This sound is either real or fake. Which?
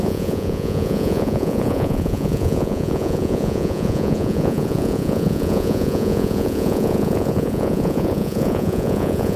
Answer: fake